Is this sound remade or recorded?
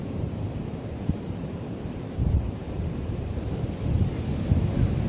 remade